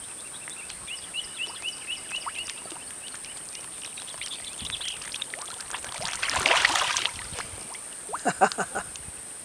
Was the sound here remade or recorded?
recorded